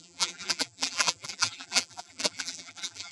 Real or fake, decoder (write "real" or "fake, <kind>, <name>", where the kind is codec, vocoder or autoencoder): fake, vocoder, BigVGAN v2